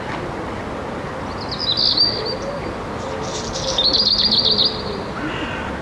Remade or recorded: recorded